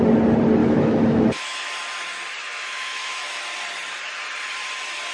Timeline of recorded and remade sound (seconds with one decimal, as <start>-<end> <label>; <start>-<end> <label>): 0.0-0.6 recorded; 0.6-1.7 remade; 1.7-2.4 recorded; 2.4-3.4 remade; 3.4-5.1 recorded